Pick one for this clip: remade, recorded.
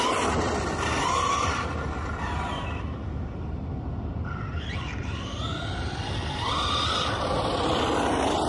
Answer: recorded